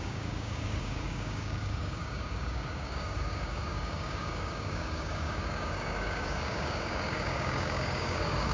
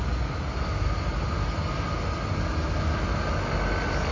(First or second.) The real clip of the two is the second